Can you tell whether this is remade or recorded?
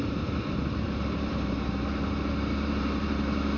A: remade